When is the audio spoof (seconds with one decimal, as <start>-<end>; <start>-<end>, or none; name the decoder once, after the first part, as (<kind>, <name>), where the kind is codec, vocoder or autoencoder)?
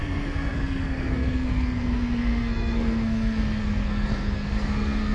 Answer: 0.0-5.1 (codec, SNAC)